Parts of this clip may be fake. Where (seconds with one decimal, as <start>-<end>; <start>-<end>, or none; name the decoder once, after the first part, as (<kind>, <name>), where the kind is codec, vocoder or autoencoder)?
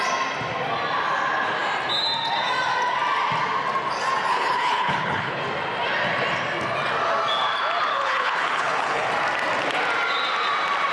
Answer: 4.3-5.4 (codec, HILCodec); 7.9-9.1